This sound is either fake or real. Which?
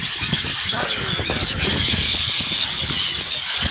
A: fake